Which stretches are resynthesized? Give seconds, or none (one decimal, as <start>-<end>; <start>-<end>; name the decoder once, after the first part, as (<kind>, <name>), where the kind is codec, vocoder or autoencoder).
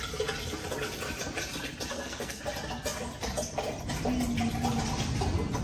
1.9-2.4 (codec, SNAC)